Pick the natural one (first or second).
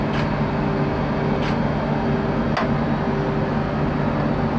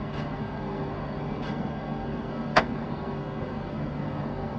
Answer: first